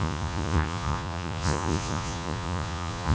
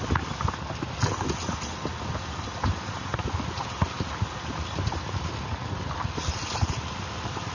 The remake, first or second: first